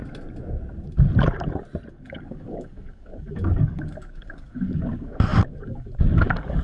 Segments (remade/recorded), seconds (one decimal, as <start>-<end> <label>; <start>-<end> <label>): 0.0-1.9 recorded; 1.9-6.6 remade